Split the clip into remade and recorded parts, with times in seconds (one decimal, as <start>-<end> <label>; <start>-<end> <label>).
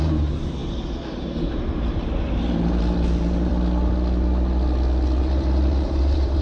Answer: 0.0-3.5 remade; 3.5-5.2 recorded; 5.2-6.4 remade